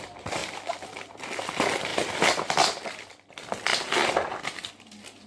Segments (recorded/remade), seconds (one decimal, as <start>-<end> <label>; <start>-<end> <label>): 0.0-3.7 recorded; 3.7-4.7 remade; 4.7-5.3 recorded